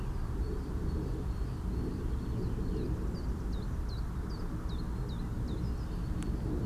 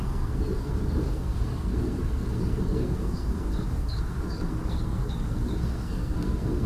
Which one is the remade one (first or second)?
second